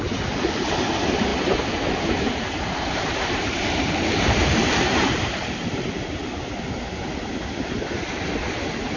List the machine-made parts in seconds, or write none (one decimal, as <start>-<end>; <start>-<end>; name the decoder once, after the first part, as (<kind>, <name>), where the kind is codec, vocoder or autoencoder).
1.3-5.9 (vocoder, BigVGAN v2)